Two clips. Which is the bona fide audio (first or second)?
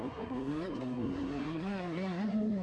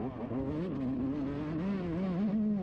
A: second